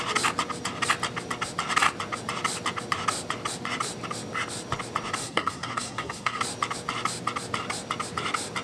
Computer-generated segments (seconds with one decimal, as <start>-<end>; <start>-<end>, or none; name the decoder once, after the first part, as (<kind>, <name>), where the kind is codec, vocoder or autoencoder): 5.2-6.4 (codec, SNAC)